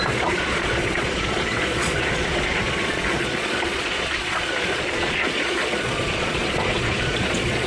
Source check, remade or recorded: remade